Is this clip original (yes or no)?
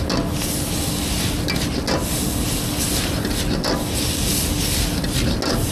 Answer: yes